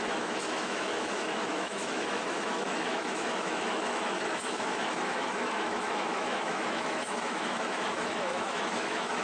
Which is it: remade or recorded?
remade